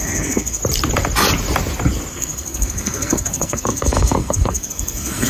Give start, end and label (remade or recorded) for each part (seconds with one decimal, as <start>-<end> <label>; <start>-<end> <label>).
0.0-0.6 remade; 0.6-2.1 recorded; 2.1-5.3 remade